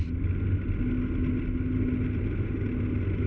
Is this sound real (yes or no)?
yes